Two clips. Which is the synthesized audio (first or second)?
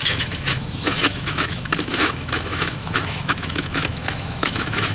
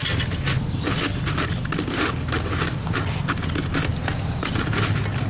first